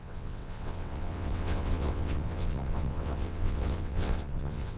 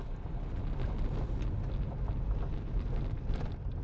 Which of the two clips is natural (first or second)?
second